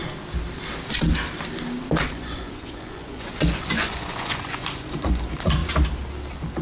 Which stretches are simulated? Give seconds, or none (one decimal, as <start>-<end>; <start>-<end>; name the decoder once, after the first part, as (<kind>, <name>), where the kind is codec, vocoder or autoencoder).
2.0-5.6 (vocoder, Vocos)